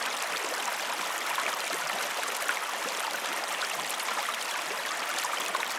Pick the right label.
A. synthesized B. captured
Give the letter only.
B